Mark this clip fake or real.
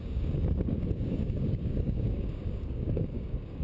fake